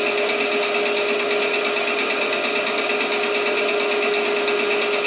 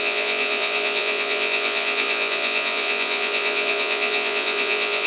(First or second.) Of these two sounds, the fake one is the second